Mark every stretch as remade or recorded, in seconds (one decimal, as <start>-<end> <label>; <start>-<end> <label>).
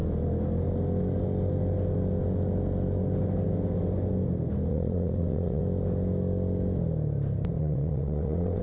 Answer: 0.0-4.7 recorded; 4.7-5.6 remade; 5.6-7.6 recorded; 7.6-8.6 remade